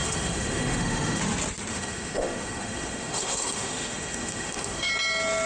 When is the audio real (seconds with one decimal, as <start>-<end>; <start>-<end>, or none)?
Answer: 1.2-1.7; 4.9-5.5